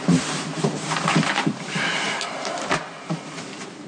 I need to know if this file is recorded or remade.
remade